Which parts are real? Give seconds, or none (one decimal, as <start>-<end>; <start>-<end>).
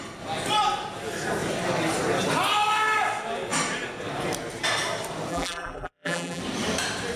0.0-5.3; 6.4-7.2